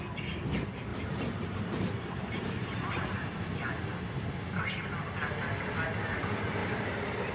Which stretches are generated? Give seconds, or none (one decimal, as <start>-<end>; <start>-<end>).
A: 0.9-3.0; 6.6-7.3